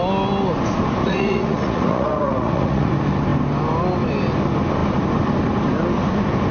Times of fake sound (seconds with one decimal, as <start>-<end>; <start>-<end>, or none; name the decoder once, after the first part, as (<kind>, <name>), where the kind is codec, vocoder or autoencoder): 1.0-2.9 (vocoder, Vocos)